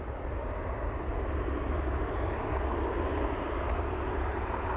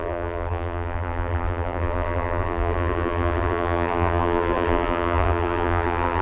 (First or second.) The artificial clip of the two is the second